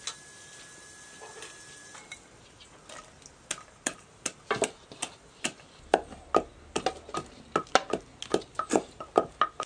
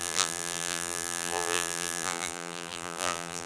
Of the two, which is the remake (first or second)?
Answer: second